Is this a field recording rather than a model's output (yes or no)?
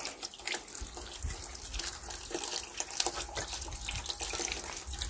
yes